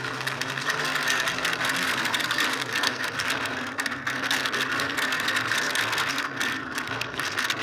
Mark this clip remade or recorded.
remade